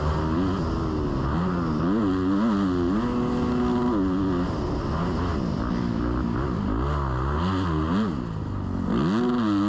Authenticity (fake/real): real